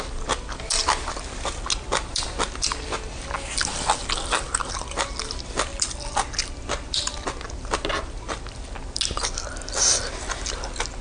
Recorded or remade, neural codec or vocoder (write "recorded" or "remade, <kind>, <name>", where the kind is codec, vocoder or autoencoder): recorded